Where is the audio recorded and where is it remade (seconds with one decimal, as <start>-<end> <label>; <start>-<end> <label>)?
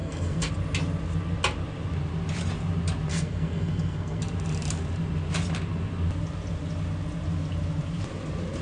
0.0-0.5 remade; 0.5-3.1 recorded; 3.1-4.2 remade; 4.2-8.6 recorded